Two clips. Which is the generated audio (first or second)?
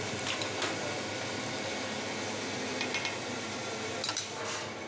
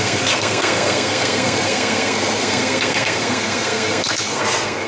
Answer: second